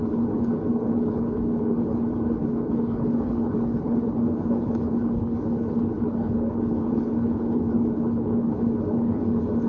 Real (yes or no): no